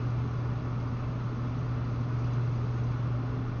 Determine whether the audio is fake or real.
real